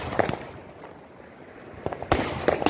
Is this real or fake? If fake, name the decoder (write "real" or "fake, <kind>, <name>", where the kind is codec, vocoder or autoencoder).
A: real